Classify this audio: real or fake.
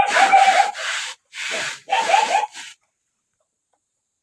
fake